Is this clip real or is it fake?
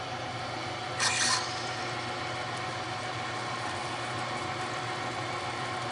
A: real